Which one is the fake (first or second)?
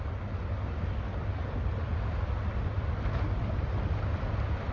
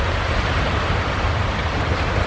second